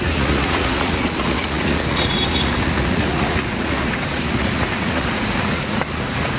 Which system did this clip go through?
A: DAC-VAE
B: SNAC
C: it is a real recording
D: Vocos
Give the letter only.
D